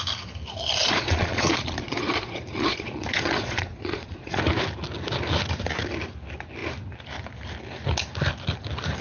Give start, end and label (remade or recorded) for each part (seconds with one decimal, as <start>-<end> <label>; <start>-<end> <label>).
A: 0.0-0.8 recorded; 0.8-4.4 remade; 4.4-9.0 recorded